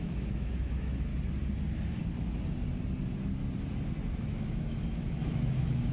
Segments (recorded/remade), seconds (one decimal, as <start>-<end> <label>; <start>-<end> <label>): 0.0-1.1 remade; 1.1-4.2 recorded; 4.2-5.9 remade

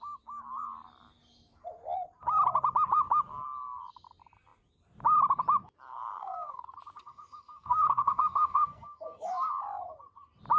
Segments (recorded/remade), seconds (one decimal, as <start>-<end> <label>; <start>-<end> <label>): 0.0-5.9 recorded; 5.9-6.6 remade; 6.6-7.0 recorded; 7.0-9.5 remade; 9.5-10.6 recorded